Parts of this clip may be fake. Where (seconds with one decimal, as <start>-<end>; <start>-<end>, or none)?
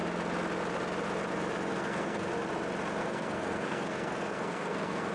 1.7-2.3; 3.0-5.1